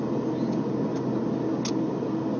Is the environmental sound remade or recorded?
recorded